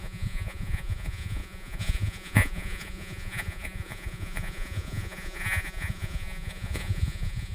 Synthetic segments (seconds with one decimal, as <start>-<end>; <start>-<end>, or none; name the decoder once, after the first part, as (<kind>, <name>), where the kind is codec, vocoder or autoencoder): 0.0-7.5 (vocoder, Vocos)